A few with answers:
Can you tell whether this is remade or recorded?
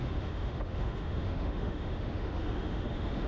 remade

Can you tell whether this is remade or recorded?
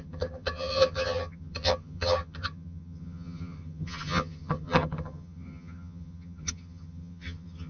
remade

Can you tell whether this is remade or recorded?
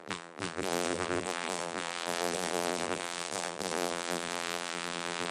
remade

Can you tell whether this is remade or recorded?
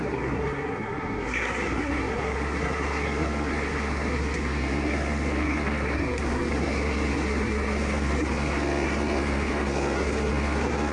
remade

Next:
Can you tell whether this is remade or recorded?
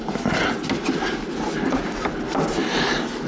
recorded